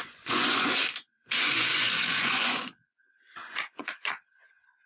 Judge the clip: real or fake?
fake